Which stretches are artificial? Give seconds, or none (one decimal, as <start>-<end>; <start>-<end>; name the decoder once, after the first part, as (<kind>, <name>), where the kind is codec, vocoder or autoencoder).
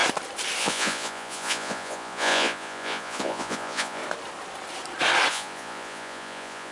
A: 0.6-4.0 (vocoder, Vocos); 5.3-6.7